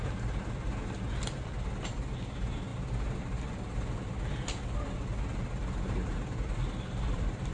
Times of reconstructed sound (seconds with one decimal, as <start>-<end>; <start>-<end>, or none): 2.7-7.5